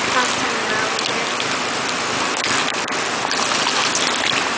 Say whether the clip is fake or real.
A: real